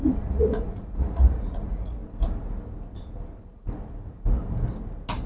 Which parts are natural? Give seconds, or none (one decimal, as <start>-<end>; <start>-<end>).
2.0-5.3